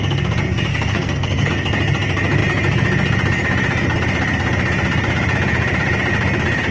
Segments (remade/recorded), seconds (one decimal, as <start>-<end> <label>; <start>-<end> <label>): 0.0-0.7 recorded; 0.7-1.5 remade; 1.5-6.7 recorded